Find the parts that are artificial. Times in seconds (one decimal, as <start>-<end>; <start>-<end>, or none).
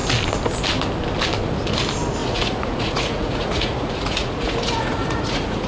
2.2-5.7